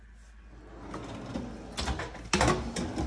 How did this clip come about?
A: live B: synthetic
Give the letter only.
A